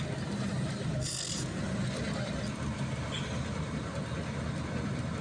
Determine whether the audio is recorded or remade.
recorded